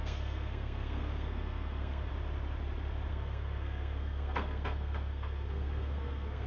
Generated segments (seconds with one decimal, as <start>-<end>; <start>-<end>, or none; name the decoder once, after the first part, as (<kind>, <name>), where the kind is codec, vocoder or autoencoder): 0.0-2.1 (codec, SNAC); 3.1-6.5